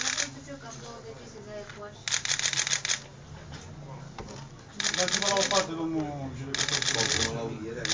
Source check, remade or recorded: recorded